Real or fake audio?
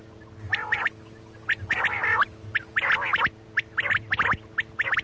real